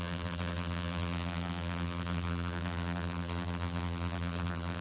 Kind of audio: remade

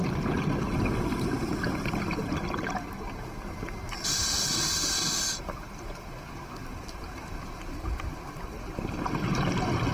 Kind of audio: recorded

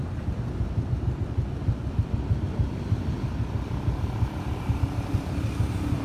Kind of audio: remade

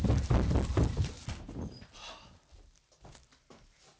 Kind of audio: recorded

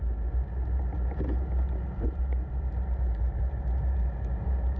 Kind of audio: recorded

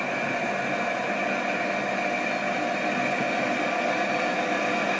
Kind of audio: recorded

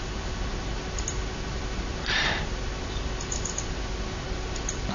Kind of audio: recorded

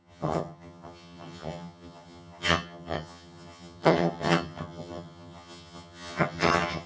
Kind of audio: remade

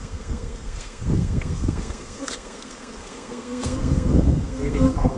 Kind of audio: remade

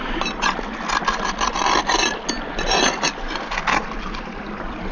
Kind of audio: recorded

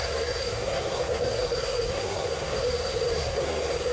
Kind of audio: remade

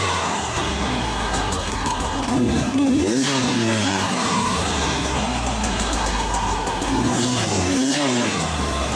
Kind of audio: remade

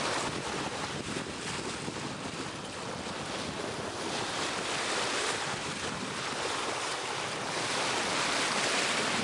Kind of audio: recorded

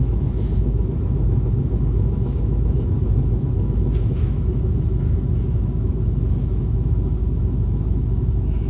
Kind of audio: remade